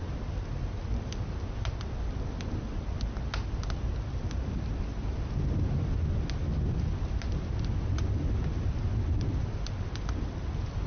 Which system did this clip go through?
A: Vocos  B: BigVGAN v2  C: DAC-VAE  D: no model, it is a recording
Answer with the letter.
D